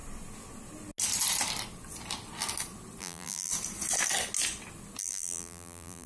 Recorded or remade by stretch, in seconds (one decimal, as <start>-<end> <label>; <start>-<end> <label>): 0.0-3.0 recorded; 3.0-3.5 remade; 3.5-5.0 recorded; 5.0-6.1 remade

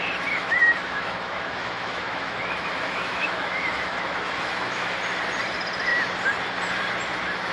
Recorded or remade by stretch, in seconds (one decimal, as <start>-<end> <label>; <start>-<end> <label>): 0.0-0.4 recorded; 0.4-4.9 remade; 4.9-7.5 recorded

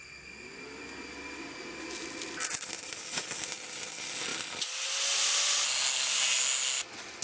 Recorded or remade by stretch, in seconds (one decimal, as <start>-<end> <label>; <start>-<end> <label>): 0.0-7.2 recorded

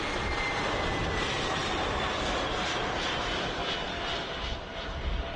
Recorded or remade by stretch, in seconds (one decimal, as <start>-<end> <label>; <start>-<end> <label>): 0.0-5.4 recorded

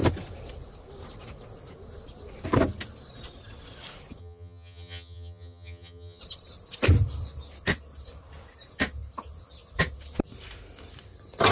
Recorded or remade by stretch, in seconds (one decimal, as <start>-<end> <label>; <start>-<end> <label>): 0.0-4.2 recorded; 4.2-6.2 remade; 6.2-11.5 recorded